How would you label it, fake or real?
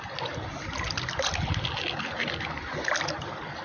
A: real